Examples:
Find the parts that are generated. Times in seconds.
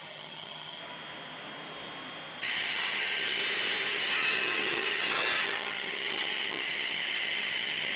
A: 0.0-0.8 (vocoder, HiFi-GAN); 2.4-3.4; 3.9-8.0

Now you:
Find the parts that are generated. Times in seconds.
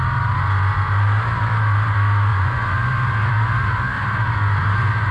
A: 2.3-2.9 (vocoder, Vocos)